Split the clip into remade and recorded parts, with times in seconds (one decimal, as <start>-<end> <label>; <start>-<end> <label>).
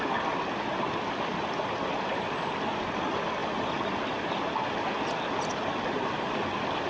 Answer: 0.0-6.9 recorded